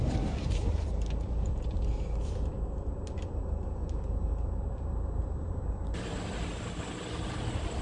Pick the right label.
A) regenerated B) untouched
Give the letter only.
A